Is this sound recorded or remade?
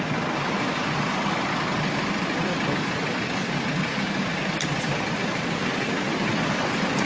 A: recorded